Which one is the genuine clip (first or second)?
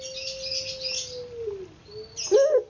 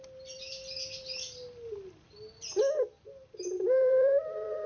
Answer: first